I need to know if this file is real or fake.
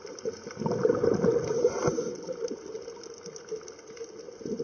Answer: real